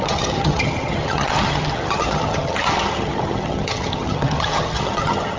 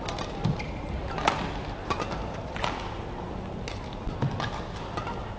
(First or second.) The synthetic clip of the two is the first